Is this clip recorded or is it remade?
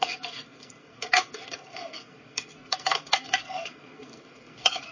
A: remade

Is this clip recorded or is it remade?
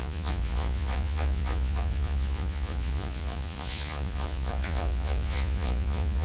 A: remade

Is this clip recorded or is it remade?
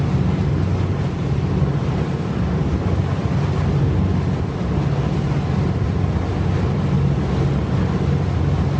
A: recorded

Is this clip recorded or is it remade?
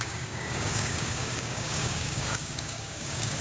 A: remade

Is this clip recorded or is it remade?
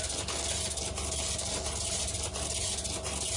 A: recorded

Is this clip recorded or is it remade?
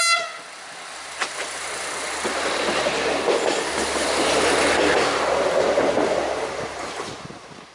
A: recorded